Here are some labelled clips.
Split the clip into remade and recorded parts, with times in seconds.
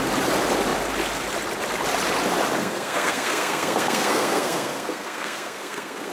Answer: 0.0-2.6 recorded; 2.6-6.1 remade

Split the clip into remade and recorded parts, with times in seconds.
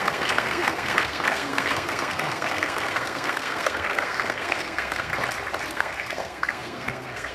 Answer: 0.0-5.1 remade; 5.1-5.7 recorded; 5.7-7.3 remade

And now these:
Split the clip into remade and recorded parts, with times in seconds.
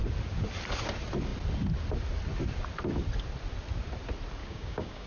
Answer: 0.0-4.4 recorded; 4.4-5.1 remade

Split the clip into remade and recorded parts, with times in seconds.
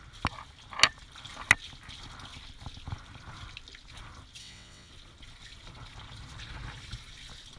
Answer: 0.0-4.4 recorded; 4.4-4.9 remade; 4.9-7.6 recorded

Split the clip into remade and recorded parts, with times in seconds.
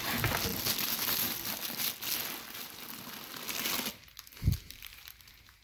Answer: 0.0-5.6 recorded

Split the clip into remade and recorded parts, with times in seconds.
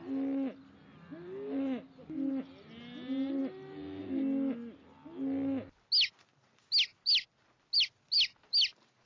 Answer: 0.0-9.1 recorded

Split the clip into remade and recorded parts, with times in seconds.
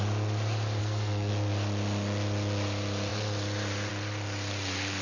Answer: 0.0-0.8 recorded; 0.8-1.3 remade; 1.3-5.0 recorded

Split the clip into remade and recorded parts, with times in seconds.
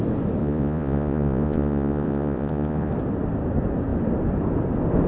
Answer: 0.0-0.4 recorded; 0.4-2.9 remade; 2.9-5.1 recorded